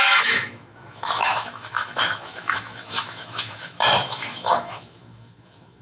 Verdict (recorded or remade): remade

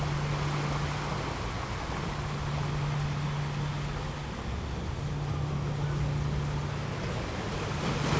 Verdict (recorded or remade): recorded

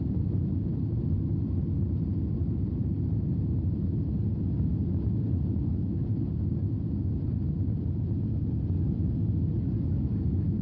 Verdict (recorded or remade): recorded